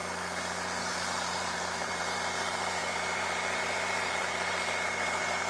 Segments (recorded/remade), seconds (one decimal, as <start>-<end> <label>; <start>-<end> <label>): 0.0-0.8 recorded; 0.8-5.5 remade